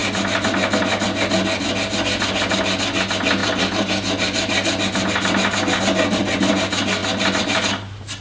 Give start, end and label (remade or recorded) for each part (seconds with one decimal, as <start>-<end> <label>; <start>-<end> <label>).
0.0-8.2 recorded